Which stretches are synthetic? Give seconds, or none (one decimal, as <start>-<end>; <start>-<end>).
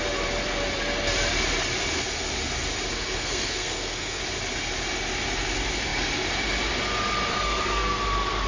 2.9-4.2; 7.3-8.0